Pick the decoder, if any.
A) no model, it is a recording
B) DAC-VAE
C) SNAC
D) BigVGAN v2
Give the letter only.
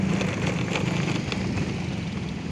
A